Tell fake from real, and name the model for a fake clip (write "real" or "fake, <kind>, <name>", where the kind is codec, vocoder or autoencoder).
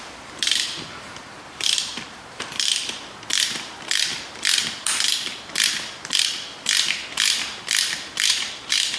fake, vocoder, BigVGAN v2